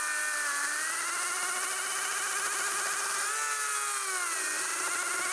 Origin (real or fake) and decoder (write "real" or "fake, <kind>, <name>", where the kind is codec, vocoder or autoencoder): real